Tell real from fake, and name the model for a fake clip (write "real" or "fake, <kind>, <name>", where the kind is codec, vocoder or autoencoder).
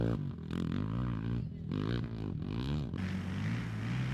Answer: real